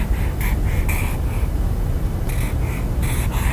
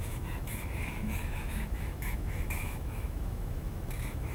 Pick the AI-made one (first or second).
second